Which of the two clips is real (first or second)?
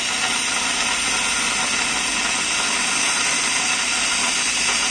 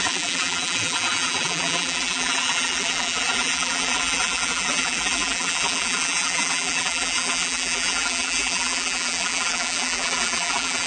first